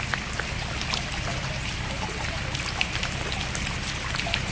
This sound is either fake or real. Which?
fake